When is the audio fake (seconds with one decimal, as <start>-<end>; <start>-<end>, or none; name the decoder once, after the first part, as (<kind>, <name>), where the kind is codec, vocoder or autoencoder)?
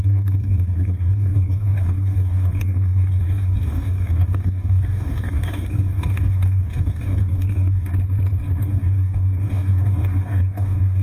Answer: 0.0-7.9 (codec, DAC); 8.6-11.0